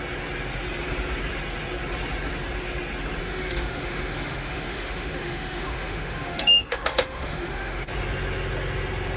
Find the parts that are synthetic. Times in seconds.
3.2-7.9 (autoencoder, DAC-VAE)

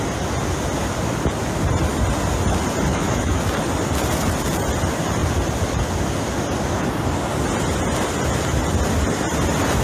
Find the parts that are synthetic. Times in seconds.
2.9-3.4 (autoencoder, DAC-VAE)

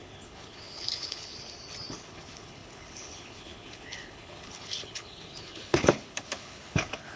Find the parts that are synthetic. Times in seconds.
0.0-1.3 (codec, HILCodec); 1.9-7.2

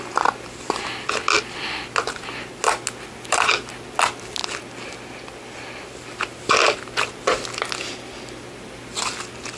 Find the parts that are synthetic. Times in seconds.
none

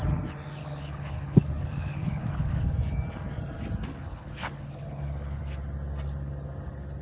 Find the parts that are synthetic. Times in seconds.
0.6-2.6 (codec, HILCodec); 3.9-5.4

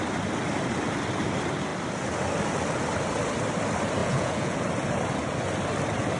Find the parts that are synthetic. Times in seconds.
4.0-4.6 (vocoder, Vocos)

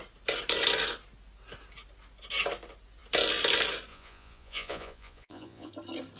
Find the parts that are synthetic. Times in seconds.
3.9-5.7 (vocoder, Vocos)